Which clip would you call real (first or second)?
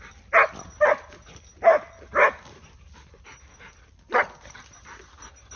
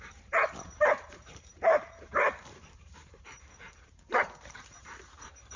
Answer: first